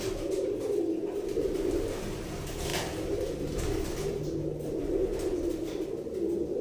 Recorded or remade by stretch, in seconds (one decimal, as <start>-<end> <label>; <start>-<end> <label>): 0.0-6.6 recorded